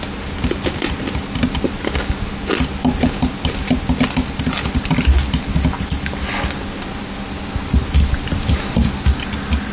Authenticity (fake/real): real